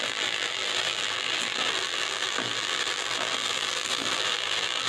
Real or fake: fake